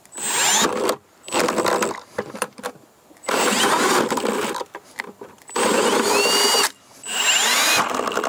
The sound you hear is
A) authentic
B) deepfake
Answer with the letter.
B